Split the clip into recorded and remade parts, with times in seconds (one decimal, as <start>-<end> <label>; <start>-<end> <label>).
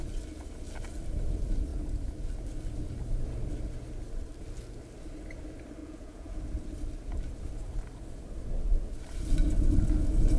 0.0-5.8 recorded; 5.8-6.4 remade; 6.4-10.4 recorded